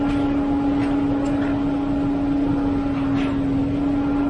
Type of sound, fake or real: real